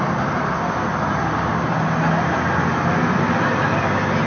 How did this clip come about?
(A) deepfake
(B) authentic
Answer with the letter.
B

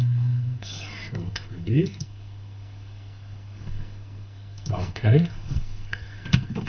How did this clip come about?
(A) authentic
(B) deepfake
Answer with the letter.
B